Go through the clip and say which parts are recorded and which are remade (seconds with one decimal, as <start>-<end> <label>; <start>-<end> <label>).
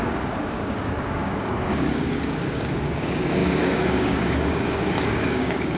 0.0-5.8 remade